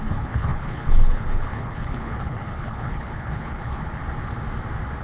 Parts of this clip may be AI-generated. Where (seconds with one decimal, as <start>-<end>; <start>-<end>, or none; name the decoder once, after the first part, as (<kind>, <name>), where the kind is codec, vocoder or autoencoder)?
0.0-4.0 (codec, HILCodec)